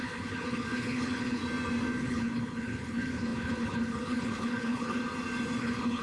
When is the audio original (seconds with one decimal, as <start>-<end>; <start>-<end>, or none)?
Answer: 1.4-2.0; 5.0-5.6